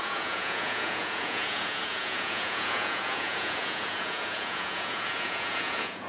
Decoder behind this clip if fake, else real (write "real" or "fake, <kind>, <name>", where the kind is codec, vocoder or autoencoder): fake, vocoder, Vocos